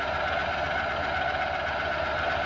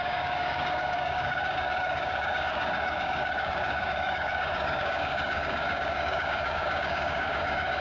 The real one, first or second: first